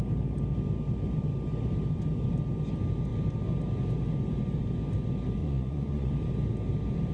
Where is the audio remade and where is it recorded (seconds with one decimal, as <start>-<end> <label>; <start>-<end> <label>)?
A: 0.0-5.4 recorded; 5.4-6.1 remade; 6.1-7.1 recorded